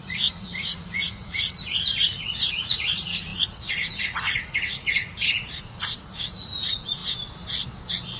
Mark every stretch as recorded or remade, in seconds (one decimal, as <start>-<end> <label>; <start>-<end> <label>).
0.0-7.0 remade; 7.0-8.2 recorded

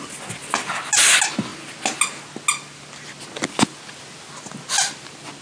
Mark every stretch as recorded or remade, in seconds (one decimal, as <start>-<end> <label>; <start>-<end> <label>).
0.0-5.4 recorded

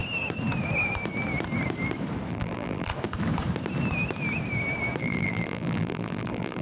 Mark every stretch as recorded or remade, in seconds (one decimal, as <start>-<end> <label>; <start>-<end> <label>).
0.0-2.3 recorded; 2.3-2.9 remade; 2.9-5.0 recorded; 5.0-6.6 remade

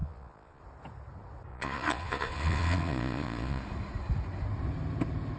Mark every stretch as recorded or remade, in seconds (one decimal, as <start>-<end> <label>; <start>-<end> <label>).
0.0-0.6 remade; 0.6-1.5 recorded; 1.5-3.6 remade; 3.6-5.4 recorded

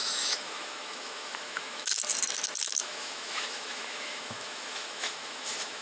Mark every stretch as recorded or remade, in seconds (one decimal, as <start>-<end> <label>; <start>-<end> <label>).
0.0-2.0 remade; 2.0-2.6 recorded; 2.6-5.8 remade